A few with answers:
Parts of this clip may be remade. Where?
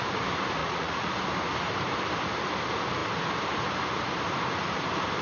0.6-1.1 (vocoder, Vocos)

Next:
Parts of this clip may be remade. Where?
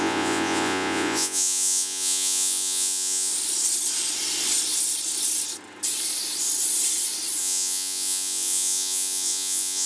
0.0-3.3 (vocoder, Vocos); 7.4-9.8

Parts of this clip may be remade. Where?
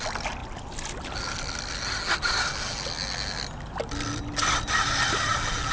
none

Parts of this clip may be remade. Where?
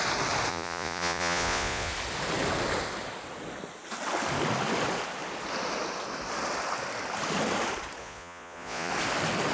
0.5-1.9 (vocoder, Vocos); 8.0-8.9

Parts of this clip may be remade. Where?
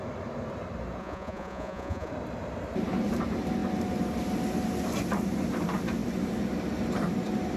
1.0-2.1 (vocoder, Vocos)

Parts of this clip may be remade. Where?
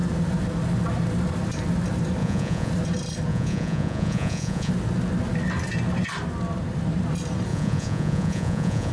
2.2-2.7 (vocoder, Vocos); 3.3-4.7; 7.5-8.9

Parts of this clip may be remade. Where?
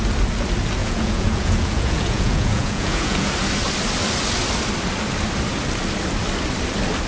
0.8-3.3 (vocoder, Vocos)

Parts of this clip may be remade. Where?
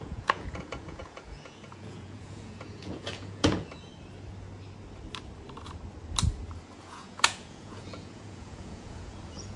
0.0-3.9 (vocoder, Vocos); 6.8-9.6